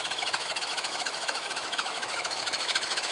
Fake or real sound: fake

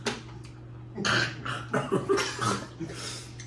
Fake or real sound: real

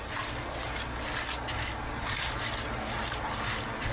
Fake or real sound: real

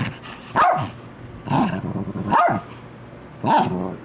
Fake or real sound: real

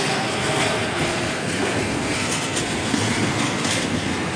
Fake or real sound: fake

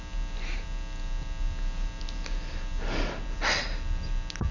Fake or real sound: real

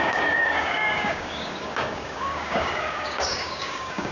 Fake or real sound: fake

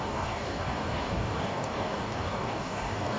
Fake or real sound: fake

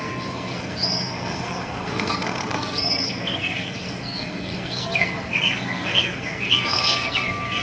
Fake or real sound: fake